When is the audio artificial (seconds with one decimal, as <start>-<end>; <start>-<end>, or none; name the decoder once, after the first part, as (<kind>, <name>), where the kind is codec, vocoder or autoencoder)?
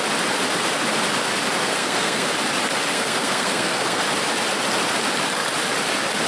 1.6-2.3 (codec, SNAC); 2.9-4.0